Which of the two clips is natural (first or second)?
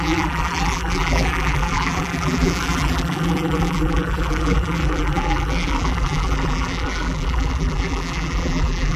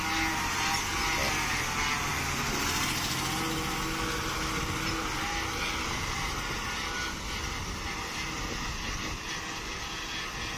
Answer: second